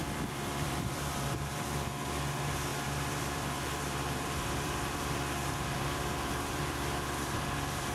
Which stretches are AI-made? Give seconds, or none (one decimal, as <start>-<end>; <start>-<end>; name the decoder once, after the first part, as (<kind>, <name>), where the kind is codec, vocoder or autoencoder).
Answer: 0.0-7.9 (vocoder, BigVGAN v2)

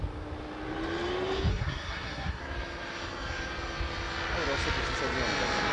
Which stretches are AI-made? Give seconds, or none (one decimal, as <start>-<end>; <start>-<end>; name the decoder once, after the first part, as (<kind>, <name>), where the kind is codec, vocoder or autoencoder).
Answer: 1.5-2.4 (codec, SNAC)

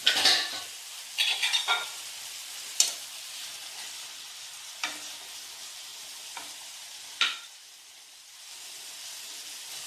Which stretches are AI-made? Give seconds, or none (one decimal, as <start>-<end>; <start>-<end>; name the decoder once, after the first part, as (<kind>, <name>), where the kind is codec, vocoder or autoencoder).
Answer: 0.0-2.2 (vocoder, BigVGAN v2); 5.9-8.4